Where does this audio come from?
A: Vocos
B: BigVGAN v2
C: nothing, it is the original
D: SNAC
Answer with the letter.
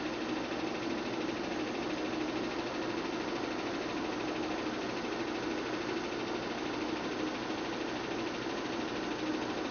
C